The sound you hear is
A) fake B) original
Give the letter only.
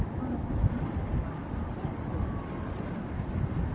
B